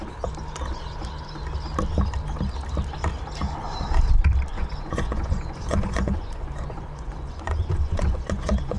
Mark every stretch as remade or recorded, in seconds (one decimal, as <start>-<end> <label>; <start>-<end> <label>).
0.0-4.5 recorded; 4.5-8.8 remade